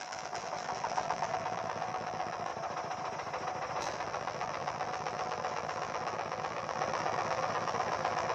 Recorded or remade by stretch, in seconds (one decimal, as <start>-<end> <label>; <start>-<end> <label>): 0.0-2.5 remade; 2.5-3.8 recorded; 3.8-8.3 remade

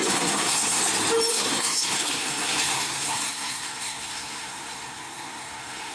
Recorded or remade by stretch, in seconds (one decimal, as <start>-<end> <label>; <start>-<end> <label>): 0.0-0.8 remade; 0.8-1.3 recorded; 1.3-5.9 remade

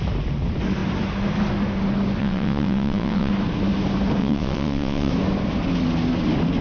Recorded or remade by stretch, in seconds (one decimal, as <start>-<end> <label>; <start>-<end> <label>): 0.0-2.2 recorded; 2.2-3.3 remade; 3.3-4.2 recorded; 4.2-5.1 remade; 5.1-6.6 recorded